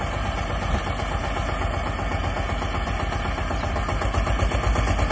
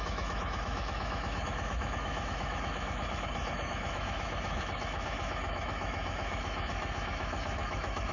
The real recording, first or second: first